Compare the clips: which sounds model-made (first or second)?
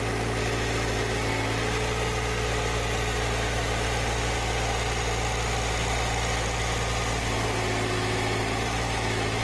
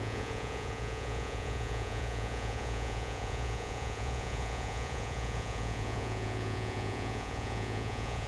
second